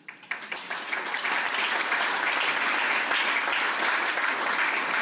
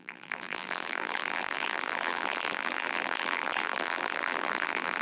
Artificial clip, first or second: second